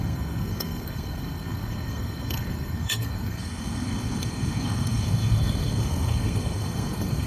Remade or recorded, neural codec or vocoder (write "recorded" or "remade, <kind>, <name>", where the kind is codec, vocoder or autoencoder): remade, codec, SNAC